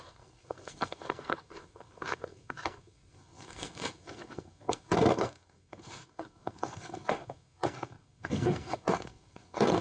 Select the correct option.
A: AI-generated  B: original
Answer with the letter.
A